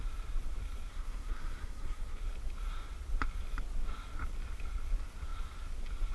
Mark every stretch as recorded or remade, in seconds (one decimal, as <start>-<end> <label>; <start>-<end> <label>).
0.0-0.9 recorded; 0.9-2.2 remade; 2.2-6.1 recorded